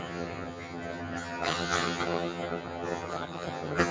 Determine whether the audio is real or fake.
fake